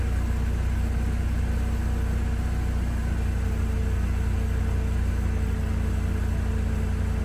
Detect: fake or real real